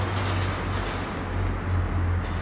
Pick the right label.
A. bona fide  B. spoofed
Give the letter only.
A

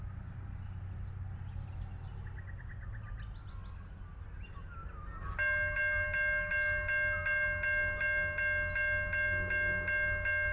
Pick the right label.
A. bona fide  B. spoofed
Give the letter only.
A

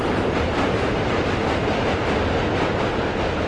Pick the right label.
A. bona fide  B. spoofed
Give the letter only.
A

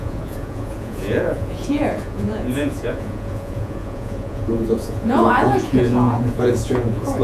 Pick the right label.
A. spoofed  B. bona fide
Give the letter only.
A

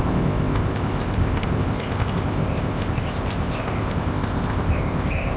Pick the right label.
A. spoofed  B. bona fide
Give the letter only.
A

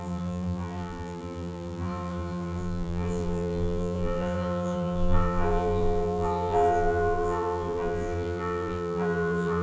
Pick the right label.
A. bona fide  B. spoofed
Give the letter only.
B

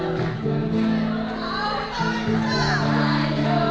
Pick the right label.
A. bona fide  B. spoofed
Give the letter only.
A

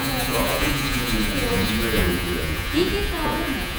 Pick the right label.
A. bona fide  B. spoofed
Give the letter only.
B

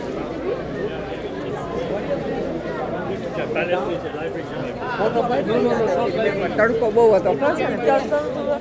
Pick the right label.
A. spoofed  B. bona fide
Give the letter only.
B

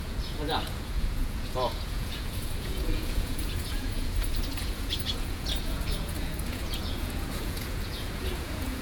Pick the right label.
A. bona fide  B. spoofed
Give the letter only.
B